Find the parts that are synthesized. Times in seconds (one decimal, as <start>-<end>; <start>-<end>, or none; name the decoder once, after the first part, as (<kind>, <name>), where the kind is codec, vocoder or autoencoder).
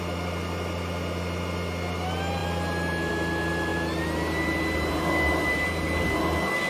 none